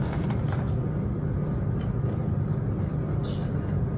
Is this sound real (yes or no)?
yes